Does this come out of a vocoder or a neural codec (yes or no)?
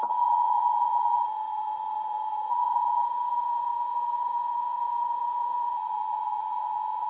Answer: yes